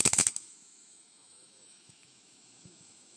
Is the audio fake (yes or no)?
yes